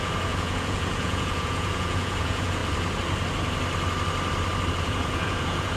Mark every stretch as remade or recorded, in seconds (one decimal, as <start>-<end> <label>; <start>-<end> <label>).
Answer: 0.0-2.6 remade; 2.6-4.7 recorded; 4.7-5.8 remade